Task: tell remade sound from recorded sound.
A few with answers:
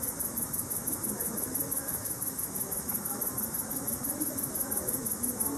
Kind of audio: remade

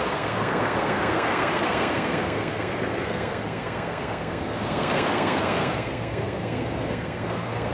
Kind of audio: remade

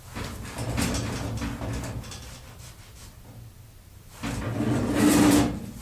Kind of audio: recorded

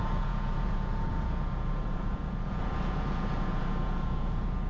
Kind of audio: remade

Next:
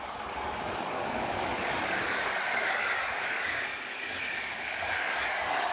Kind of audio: remade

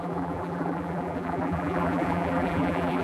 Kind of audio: remade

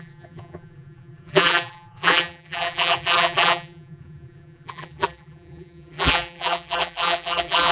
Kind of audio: remade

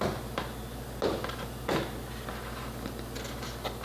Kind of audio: recorded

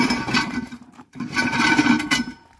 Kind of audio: remade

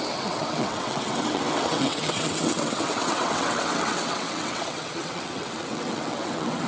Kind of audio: remade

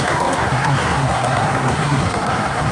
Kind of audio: remade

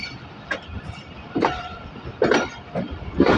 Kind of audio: remade